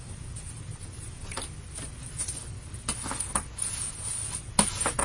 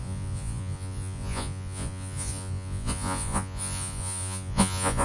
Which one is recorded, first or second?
first